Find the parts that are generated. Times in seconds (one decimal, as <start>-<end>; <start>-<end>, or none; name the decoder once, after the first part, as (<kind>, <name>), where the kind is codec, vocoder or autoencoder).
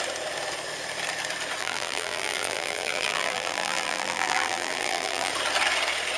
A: 1.6-5.3 (vocoder, BigVGAN v2)